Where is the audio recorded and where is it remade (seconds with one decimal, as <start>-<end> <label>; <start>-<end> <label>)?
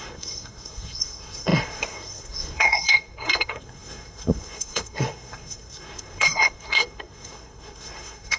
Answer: 0.0-8.4 remade